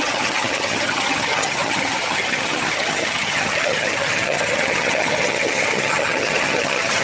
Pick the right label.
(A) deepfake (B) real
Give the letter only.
A